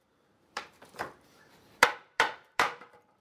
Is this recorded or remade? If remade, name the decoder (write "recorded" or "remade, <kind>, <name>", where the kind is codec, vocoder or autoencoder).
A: remade, vocoder, BigVGAN v2